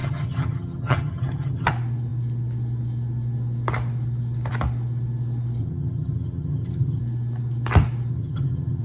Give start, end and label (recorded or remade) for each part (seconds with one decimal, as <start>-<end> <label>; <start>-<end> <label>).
0.0-1.7 remade; 1.7-5.6 recorded; 5.6-7.0 remade; 7.0-8.1 recorded; 8.1-8.8 remade